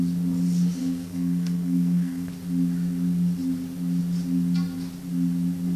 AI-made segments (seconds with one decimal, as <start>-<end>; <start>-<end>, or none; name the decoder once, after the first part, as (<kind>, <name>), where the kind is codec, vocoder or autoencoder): 0.8-2.3 (codec, SNAC)